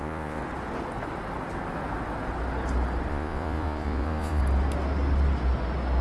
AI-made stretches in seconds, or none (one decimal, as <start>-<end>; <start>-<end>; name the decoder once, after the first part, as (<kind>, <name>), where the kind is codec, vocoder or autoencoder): 0.0-0.4 (vocoder, Vocos); 3.1-4.4